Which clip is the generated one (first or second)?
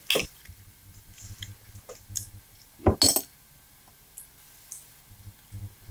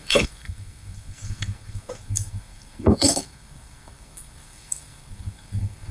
second